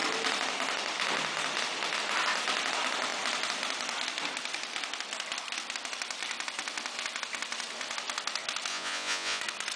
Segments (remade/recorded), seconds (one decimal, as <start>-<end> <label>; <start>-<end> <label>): 0.0-8.7 recorded; 8.7-9.4 remade; 9.4-9.8 recorded